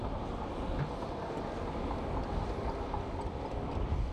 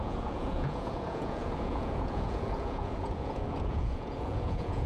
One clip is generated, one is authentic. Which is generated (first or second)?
second